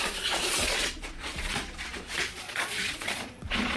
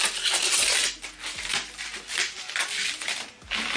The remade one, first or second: first